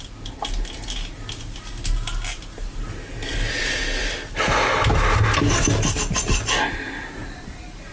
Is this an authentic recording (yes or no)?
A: yes